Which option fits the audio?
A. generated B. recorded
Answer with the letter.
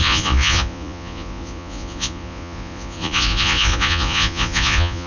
A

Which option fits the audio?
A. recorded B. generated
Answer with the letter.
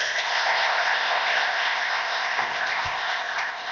B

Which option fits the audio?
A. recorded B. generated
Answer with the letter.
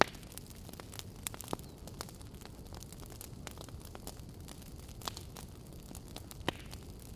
A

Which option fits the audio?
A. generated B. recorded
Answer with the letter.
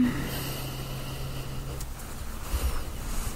B